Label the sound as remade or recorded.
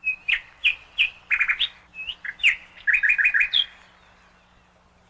recorded